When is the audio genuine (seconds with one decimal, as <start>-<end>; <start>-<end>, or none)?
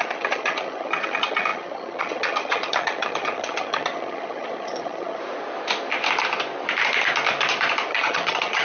5.2-7.9